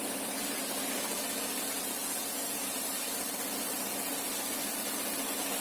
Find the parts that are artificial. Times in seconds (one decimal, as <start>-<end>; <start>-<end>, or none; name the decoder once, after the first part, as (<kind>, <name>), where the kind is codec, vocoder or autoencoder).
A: 2.0-2.8 (vocoder, Vocos)